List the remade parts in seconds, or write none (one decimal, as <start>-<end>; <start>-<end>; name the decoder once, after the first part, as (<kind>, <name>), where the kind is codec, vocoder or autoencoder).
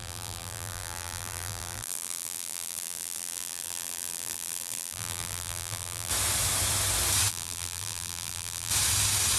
0.0-6.1 (vocoder, BigVGAN v2); 7.3-8.7